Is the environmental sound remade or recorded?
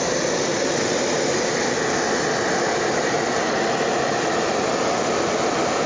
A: recorded